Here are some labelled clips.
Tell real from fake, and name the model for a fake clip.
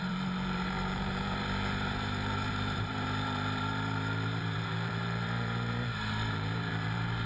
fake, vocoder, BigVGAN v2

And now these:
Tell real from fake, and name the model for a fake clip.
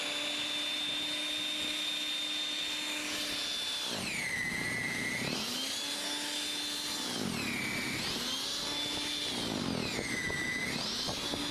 real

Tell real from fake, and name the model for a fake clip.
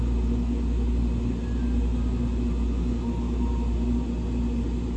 real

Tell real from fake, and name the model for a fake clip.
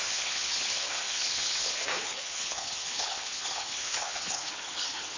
fake, codec, HILCodec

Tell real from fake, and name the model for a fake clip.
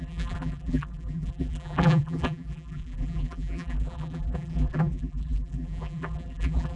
fake, vocoder, BigVGAN v2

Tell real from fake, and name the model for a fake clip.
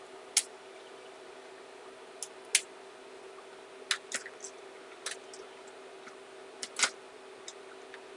real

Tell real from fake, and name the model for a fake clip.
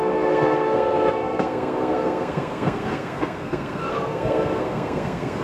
fake, codec, SNAC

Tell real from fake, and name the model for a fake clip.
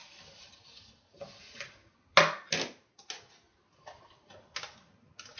real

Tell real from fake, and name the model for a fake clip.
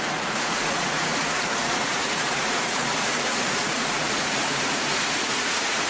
fake, vocoder, Vocos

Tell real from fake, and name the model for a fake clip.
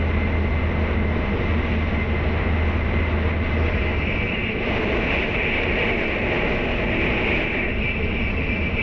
real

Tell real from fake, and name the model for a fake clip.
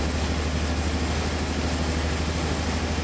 real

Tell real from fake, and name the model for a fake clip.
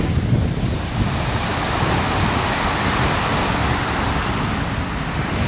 real